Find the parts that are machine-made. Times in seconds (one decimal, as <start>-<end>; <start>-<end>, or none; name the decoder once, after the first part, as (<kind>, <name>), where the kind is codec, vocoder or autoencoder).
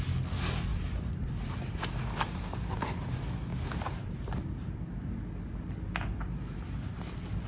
0.7-1.9 (vocoder, BigVGAN v2); 3.5-4.7